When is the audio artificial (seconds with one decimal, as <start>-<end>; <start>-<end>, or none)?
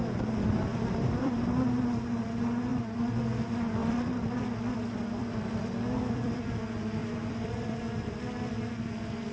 0.7-1.4; 2.7-3.2; 3.8-6.5; 7.0-8.2